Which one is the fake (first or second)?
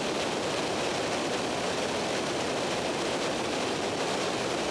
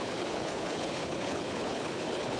second